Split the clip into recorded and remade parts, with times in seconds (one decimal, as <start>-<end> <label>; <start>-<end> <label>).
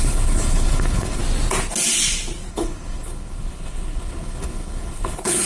0.0-1.2 remade; 1.2-2.5 recorded; 2.5-5.5 remade